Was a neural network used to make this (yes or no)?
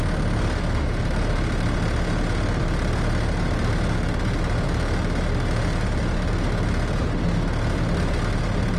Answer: no